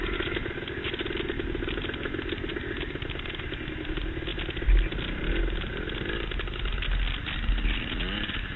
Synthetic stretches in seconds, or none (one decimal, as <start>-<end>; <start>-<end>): none